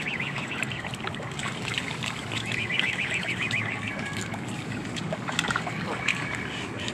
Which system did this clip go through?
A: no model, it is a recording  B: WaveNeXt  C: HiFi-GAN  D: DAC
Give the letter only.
D